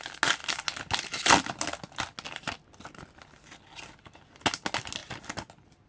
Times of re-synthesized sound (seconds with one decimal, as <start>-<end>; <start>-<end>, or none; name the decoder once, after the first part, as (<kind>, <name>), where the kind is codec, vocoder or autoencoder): none